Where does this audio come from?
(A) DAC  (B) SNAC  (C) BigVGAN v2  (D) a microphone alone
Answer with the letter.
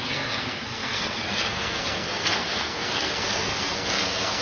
B